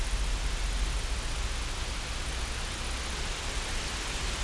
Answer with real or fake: real